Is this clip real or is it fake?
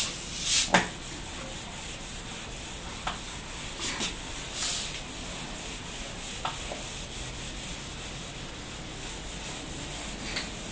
real